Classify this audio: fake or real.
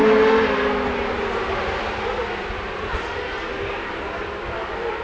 real